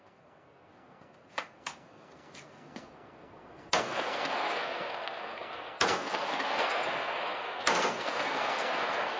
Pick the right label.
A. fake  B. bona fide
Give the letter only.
A